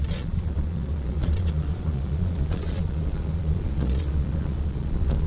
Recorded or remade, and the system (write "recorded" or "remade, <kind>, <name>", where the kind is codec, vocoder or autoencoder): remade, vocoder, Vocos